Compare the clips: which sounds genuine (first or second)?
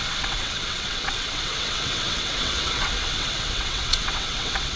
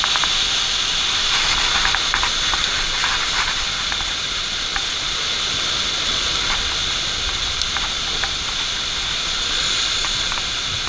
second